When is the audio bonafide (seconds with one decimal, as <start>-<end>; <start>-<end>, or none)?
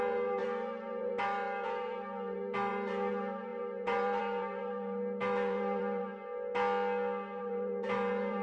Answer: 6.1-7.4